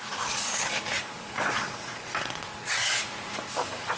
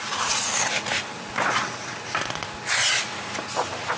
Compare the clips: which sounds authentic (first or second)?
second